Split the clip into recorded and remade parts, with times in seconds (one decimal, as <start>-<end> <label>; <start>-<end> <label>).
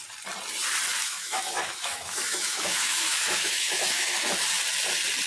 0.0-1.0 recorded; 1.0-4.1 remade; 4.1-5.3 recorded